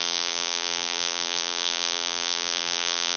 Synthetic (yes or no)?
yes